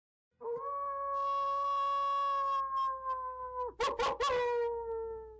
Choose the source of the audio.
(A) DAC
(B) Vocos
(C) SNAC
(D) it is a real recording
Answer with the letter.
D